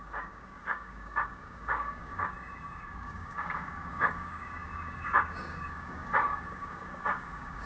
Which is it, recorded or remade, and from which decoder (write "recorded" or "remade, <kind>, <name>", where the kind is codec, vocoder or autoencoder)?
remade, codec, DAC